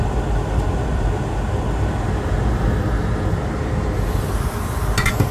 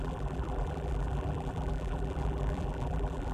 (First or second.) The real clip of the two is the first